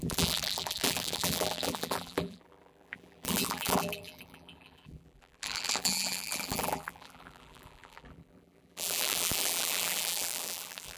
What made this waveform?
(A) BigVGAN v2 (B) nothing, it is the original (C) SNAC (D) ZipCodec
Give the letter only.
A